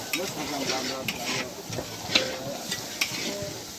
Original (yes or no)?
yes